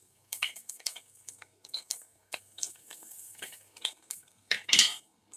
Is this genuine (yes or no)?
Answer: no